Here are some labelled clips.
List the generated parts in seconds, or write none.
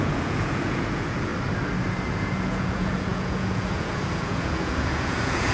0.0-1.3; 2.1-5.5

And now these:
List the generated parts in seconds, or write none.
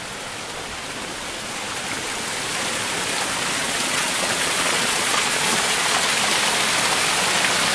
3.6-6.1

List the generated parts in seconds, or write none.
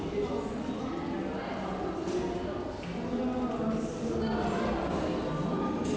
none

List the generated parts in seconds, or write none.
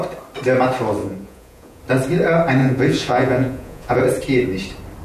1.0-1.8; 2.6-4.0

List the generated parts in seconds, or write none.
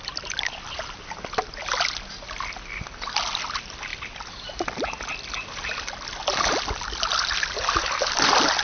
none